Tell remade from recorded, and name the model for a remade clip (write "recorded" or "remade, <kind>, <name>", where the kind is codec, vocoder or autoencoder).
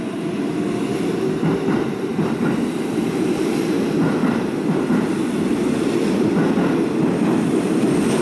remade, vocoder, BigVGAN v2